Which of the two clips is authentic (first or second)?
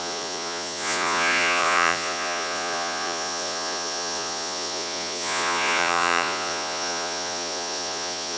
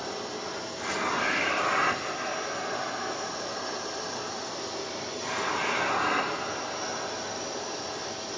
second